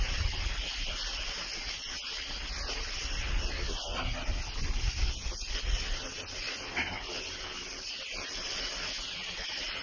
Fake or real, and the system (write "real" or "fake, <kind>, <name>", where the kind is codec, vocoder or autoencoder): real